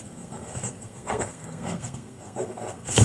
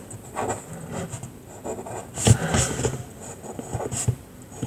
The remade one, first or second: first